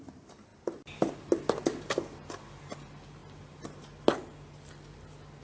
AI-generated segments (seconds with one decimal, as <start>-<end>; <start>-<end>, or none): none